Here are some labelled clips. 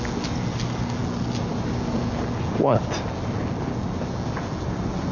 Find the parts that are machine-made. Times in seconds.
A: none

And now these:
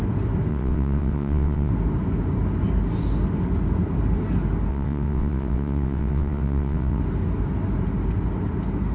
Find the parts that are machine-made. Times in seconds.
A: 0.5-1.7 (vocoder, WaveNeXt); 4.7-7.0

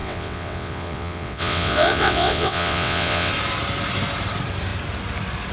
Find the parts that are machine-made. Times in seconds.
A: 0.0-3.3 (vocoder, WaveNeXt)

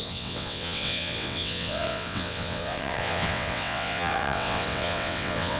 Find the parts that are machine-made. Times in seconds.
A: 0.0-5.6 (vocoder, WaveNeXt)

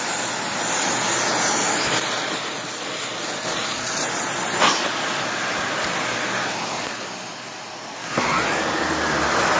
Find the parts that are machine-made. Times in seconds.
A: none

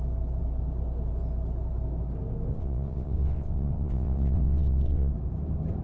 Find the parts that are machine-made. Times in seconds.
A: 2.5-5.1 (vocoder, WaveNeXt)

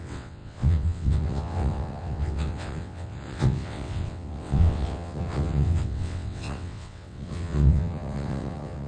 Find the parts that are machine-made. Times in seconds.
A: 0.0-8.9 (vocoder, WaveNeXt)